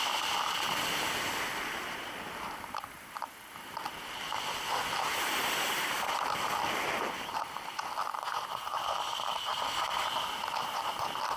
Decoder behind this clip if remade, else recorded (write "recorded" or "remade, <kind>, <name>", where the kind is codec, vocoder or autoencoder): recorded